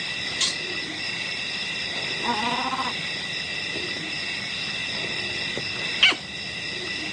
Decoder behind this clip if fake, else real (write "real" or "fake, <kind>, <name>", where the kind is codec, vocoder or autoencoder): real